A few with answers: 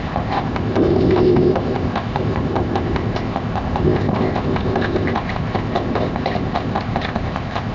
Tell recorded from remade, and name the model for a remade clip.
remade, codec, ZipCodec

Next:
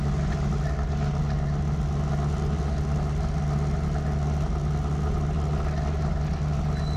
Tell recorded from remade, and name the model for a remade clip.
recorded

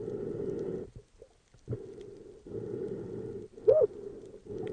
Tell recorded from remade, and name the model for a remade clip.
recorded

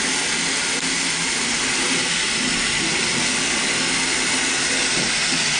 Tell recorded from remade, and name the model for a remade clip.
recorded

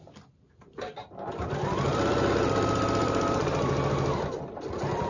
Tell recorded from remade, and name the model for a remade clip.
recorded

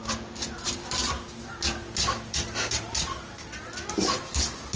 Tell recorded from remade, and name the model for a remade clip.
recorded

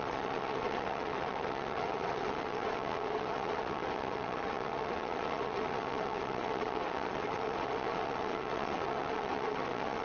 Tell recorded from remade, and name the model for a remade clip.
remade, vocoder, WaveNeXt